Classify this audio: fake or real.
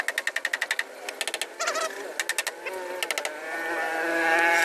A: real